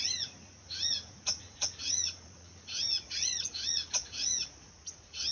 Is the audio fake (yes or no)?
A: yes